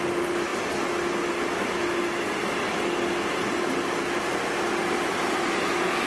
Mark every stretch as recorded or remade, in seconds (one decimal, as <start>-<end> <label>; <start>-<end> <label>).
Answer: 0.0-6.1 recorded